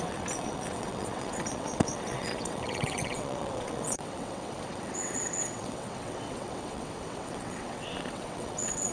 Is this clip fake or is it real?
fake